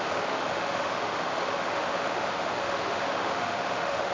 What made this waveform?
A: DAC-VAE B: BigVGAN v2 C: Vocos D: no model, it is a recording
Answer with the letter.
A